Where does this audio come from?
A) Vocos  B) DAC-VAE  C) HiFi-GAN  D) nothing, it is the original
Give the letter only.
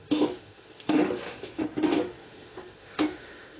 B